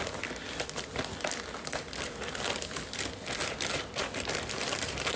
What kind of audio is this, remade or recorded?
recorded